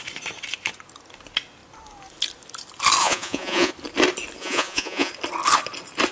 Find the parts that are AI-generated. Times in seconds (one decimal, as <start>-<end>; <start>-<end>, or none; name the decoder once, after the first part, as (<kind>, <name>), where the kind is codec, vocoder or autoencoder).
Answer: 3.0-3.7 (vocoder, Vocos); 4.4-5.1